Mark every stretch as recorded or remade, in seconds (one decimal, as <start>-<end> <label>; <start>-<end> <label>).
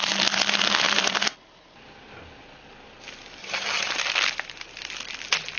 0.0-3.4 recorded; 3.4-3.9 remade; 3.9-5.6 recorded